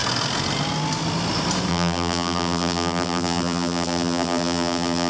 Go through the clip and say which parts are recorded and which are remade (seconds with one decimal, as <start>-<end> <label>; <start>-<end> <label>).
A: 0.0-1.7 recorded; 1.7-5.1 remade